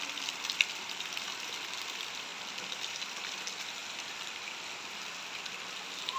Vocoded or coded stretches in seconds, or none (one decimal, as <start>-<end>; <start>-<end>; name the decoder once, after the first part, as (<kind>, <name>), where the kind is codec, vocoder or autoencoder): none